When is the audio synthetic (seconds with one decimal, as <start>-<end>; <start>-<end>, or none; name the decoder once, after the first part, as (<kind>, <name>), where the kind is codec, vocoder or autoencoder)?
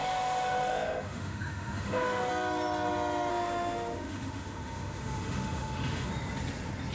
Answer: 0.0-2.3 (autoencoder, DAC-VAE); 3.3-6.1